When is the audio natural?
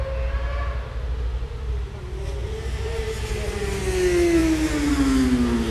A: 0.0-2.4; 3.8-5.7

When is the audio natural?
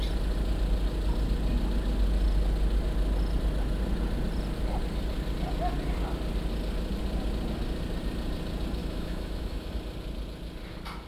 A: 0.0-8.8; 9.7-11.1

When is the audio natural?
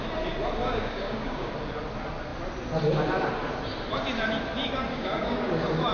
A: 0.0-0.6; 1.5-4.9; 5.5-5.9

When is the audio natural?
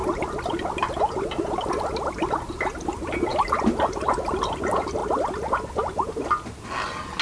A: 0.0-7.2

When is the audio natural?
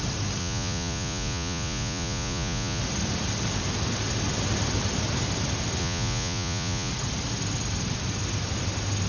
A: 0.0-0.4; 2.8-5.8; 6.9-9.1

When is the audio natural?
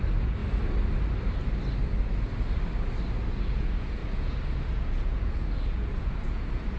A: 0.4-3.4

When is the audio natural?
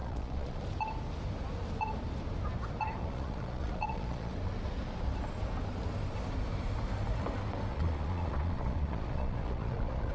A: 0.6-3.0; 4.3-7.7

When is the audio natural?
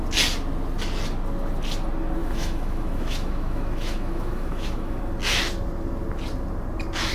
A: 0.0-2.2; 5.0-7.1